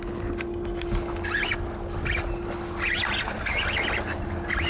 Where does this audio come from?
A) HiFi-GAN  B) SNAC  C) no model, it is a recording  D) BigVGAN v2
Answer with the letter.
C